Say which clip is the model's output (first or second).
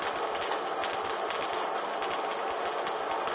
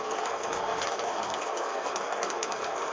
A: second